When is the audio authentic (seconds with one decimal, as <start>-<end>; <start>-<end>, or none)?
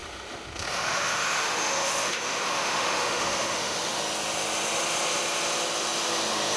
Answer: 4.0-6.6